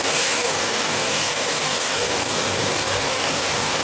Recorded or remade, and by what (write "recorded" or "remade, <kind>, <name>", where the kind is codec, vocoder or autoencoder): remade, codec, DAC